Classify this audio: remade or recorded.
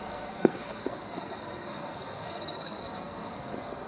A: remade